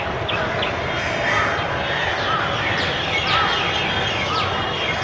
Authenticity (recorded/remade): recorded